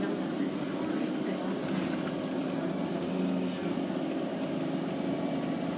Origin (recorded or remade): recorded